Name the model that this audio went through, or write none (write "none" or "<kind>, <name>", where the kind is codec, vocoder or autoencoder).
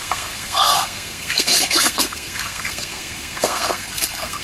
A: codec, SNAC